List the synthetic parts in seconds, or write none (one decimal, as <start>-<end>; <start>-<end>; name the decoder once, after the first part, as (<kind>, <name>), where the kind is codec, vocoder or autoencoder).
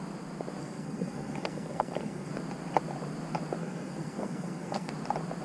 0.6-2.3 (codec, SNAC); 3.6-4.9